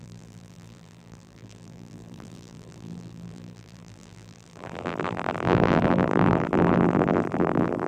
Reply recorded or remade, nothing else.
remade